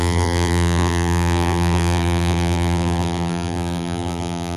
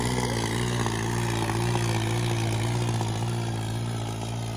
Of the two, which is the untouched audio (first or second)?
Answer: second